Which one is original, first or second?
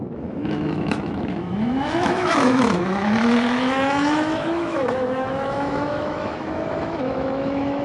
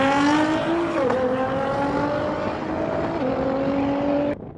second